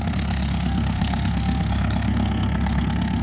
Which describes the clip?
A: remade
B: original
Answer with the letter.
A